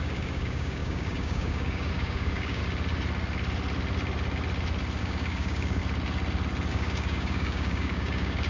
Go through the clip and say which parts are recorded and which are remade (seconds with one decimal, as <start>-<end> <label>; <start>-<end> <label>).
0.0-2.6 remade; 2.6-5.0 recorded; 5.0-5.8 remade; 5.8-6.7 recorded; 6.7-8.5 remade